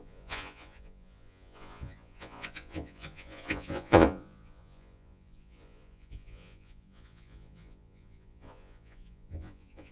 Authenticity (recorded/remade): remade